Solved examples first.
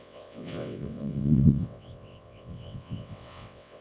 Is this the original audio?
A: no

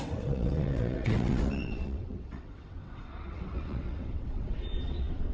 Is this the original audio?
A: no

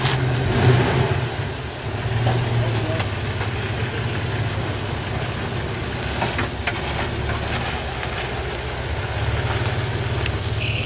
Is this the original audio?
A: yes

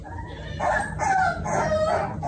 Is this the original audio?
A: yes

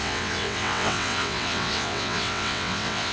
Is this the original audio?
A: no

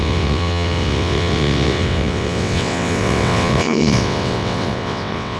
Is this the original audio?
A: no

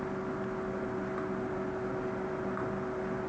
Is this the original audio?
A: yes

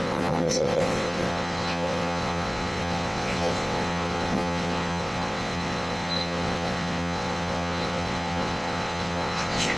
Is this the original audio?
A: no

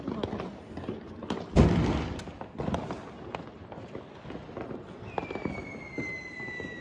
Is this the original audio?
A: yes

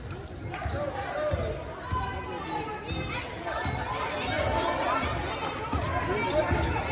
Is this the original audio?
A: yes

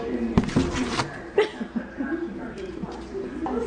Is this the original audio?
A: yes